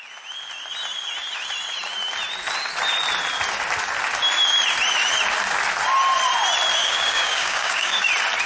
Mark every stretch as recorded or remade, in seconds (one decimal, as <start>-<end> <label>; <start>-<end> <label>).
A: 0.0-6.8 recorded; 6.8-8.1 remade; 8.1-8.5 recorded